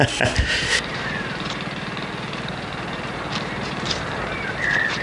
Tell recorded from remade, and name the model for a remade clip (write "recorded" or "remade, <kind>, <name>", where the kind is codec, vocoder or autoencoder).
remade, vocoder, BigVGAN v2